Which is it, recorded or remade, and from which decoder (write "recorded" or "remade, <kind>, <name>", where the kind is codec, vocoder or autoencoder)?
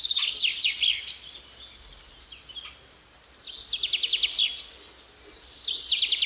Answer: recorded